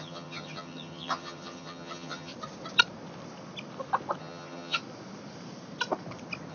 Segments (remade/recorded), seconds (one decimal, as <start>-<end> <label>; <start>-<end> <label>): 0.0-2.3 remade; 2.3-4.2 recorded; 4.2-4.8 remade; 4.8-6.5 recorded